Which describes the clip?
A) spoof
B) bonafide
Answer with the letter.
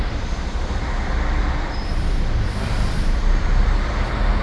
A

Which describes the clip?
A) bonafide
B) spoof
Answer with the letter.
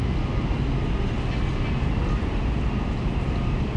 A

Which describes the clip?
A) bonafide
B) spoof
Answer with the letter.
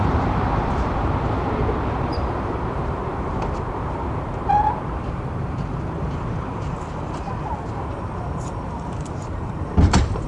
B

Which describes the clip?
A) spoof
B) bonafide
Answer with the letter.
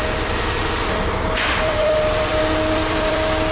A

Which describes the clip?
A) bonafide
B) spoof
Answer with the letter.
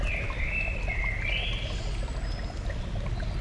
A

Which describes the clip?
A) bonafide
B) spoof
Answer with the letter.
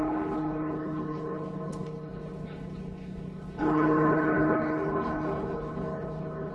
B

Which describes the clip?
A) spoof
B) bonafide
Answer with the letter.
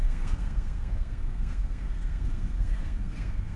A